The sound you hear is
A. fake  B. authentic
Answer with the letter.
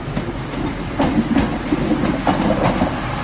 B